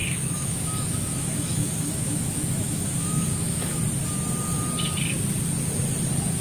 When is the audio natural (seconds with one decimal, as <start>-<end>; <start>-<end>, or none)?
3.8-6.4